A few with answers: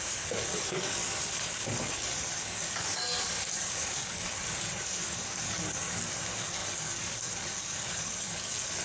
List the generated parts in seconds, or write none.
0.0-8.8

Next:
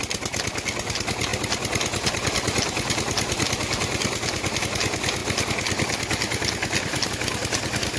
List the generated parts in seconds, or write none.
none

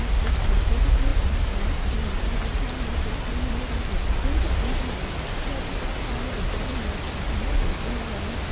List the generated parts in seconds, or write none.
1.1-2.0; 6.7-7.7

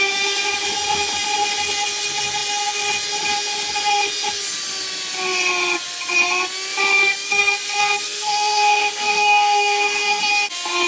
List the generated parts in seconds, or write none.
7.0-10.2

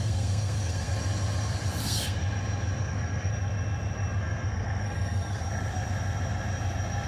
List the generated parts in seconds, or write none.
0.0-0.9; 1.8-2.2; 2.8-3.3; 4.2-5.5

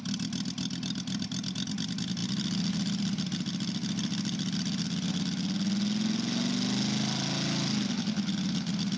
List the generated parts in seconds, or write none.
none

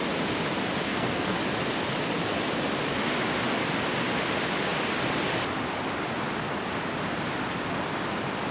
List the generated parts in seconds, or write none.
0.9-1.4